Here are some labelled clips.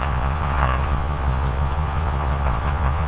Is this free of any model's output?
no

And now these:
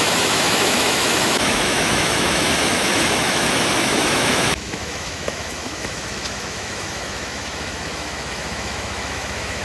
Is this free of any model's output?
no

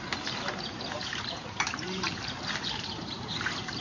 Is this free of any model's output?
no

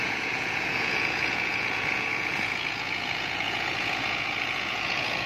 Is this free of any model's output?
no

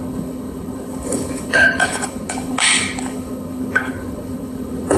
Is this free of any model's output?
no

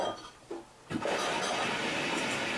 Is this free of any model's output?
no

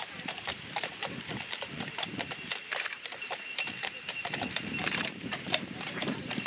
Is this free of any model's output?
no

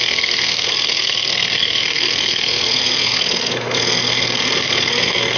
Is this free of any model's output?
no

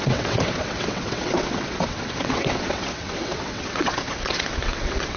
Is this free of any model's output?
no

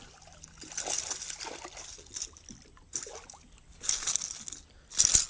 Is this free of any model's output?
yes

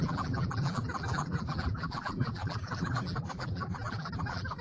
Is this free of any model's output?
no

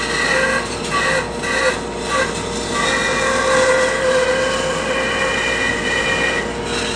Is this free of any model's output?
yes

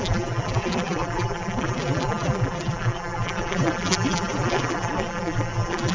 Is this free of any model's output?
no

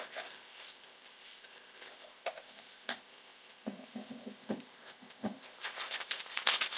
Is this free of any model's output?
no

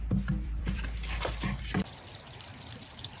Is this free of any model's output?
no